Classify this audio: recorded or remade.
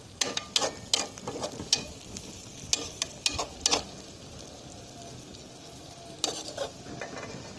recorded